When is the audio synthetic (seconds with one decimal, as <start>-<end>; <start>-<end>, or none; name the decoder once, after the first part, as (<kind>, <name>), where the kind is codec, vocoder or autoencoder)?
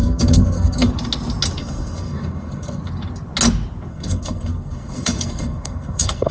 0.0-0.9 (codec, SNAC); 1.6-2.8; 3.9-6.3